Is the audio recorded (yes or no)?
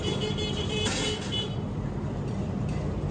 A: no